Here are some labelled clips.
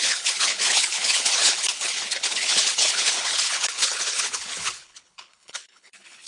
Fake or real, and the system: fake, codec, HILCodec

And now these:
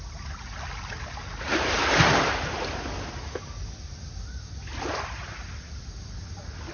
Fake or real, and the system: real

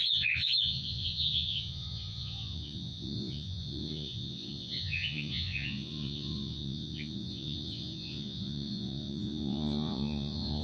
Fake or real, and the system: fake, vocoder, Vocos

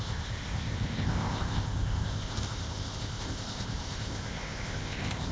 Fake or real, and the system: fake, codec, ZipCodec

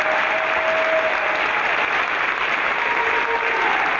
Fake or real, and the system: real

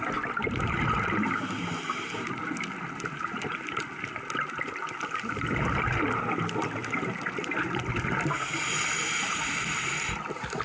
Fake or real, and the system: real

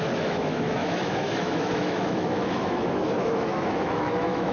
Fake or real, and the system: fake, autoencoder, DAC-VAE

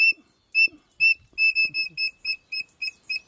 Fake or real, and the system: real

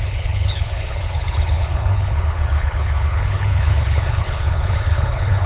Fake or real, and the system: fake, codec, HILCodec